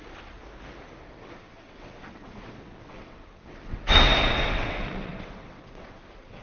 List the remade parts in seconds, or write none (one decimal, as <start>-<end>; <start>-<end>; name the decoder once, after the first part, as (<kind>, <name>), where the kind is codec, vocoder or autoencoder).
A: 0.0-0.4 (vocoder, WaveNeXt); 1.1-6.4